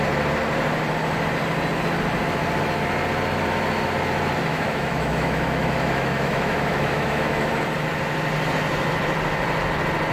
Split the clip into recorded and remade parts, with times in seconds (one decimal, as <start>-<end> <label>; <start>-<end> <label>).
0.0-4.5 recorded; 4.5-7.5 remade; 7.5-10.1 recorded